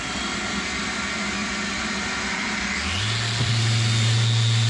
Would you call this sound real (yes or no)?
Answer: yes